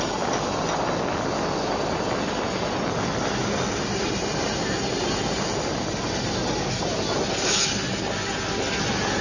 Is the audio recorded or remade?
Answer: recorded